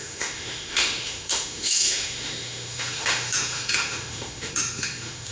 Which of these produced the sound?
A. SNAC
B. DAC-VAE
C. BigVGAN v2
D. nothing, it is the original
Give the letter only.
B